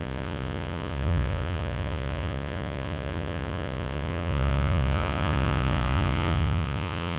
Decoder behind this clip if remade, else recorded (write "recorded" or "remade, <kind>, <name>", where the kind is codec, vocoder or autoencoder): remade, vocoder, Vocos